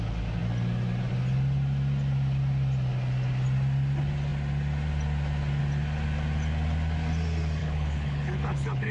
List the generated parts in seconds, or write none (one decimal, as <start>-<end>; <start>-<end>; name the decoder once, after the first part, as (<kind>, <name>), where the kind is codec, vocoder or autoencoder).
7.6-8.9 (codec, HILCodec)